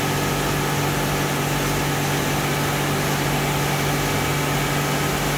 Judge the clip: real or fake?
real